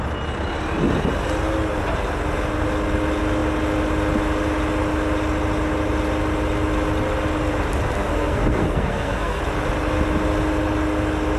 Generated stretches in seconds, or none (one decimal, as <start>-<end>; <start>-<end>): 8.1-9.4